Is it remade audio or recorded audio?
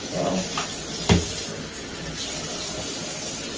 recorded